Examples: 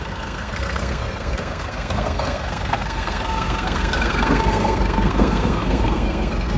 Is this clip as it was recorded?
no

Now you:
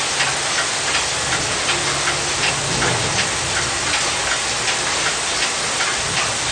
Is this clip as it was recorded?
yes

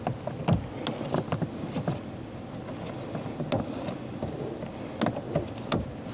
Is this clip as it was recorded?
yes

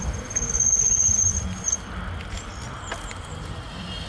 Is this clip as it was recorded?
yes